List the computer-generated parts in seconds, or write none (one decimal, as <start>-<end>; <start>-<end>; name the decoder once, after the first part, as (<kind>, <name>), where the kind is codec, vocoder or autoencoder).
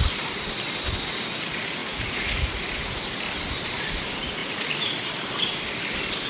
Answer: 1.8-2.5 (vocoder, Vocos); 4.4-5.0